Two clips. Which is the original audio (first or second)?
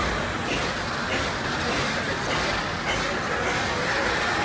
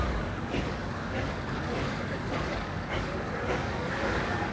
first